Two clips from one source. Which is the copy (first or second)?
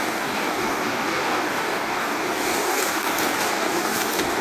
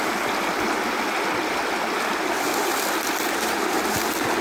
first